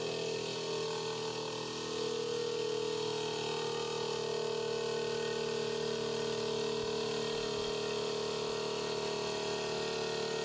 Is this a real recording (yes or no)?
yes